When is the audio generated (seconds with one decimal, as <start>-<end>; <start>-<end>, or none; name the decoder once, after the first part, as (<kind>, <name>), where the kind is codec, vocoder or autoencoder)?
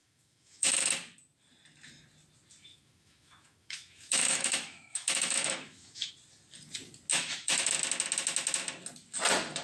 0.0-0.9 (autoencoder, DAC-VAE); 2.7-6.1; 7.1-7.7